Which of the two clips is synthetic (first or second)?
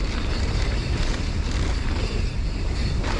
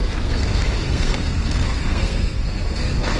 second